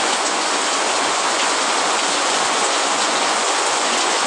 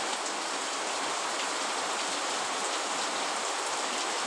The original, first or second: second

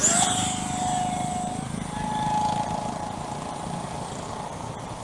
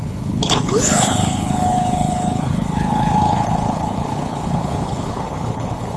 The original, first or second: first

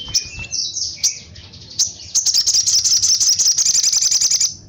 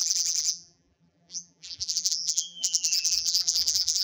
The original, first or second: first